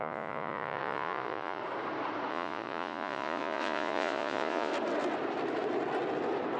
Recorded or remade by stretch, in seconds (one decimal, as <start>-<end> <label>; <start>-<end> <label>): 0.0-1.6 remade; 1.6-2.3 recorded; 2.3-4.7 remade; 4.7-6.6 recorded